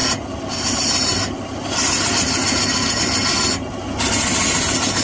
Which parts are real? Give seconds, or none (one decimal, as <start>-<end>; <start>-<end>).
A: 0.0-5.0